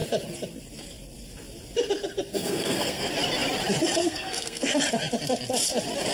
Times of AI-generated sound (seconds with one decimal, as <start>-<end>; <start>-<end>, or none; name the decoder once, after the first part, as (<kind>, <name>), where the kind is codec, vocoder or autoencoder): 2.3-3.1 (codec, SNAC); 4.0-4.7